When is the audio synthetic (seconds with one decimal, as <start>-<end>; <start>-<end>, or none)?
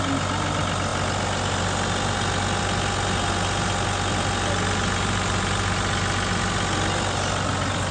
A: none